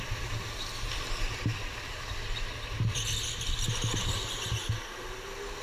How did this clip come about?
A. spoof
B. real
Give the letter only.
B